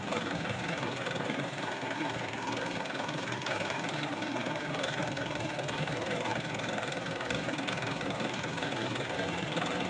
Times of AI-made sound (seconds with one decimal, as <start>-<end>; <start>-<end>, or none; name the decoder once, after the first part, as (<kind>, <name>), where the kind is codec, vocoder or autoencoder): 0.0-9.9 (codec, SNAC)